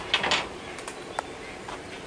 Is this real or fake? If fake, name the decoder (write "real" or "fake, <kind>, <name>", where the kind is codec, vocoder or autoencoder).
real